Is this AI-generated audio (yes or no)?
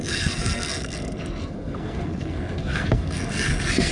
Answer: yes